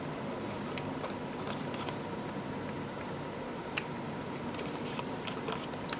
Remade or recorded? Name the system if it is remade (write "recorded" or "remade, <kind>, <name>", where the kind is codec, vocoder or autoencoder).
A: recorded